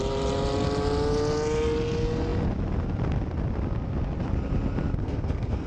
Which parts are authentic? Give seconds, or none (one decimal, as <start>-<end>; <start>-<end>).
0.0-5.0